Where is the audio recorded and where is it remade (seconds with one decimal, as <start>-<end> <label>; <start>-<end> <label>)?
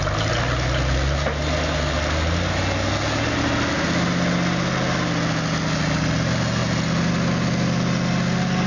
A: 0.0-8.7 recorded